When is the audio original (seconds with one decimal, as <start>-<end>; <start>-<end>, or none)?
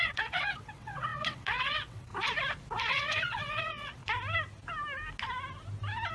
2.1-2.8; 4.0-6.1